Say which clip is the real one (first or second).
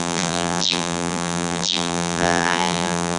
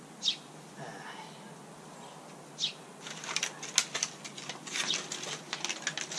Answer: second